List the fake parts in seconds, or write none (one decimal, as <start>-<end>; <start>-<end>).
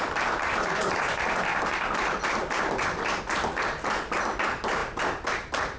none